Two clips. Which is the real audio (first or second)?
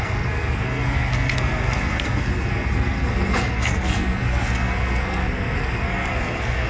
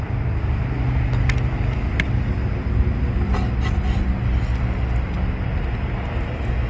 second